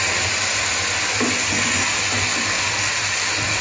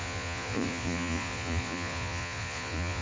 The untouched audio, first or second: first